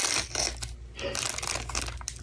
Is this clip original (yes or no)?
yes